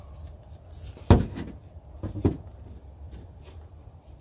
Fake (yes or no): no